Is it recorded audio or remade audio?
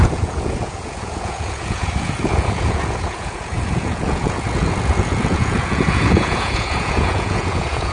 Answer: remade